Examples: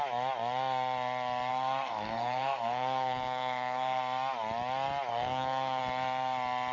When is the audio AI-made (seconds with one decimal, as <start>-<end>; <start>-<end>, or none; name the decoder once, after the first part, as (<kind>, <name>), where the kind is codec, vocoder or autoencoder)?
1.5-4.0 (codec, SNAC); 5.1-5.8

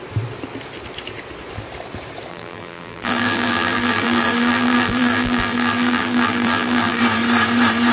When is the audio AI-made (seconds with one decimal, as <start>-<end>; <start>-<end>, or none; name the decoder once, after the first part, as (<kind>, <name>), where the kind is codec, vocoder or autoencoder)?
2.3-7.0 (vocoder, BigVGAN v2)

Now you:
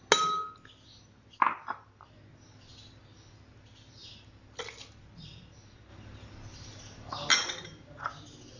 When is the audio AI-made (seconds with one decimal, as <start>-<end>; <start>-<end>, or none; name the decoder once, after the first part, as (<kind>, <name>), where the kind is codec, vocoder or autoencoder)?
4.0-4.6 (vocoder, BigVGAN v2); 5.9-7.3